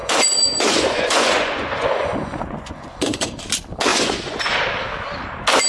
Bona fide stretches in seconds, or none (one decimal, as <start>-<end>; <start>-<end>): 3.4-3.9; 4.6-5.7